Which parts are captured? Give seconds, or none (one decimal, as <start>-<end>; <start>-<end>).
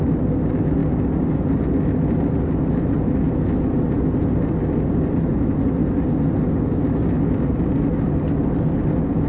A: 0.0-9.3